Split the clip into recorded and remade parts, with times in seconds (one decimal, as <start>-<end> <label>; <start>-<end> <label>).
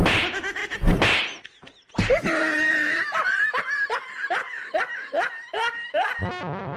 0.0-0.6 recorded; 0.6-4.7 remade; 4.7-6.8 recorded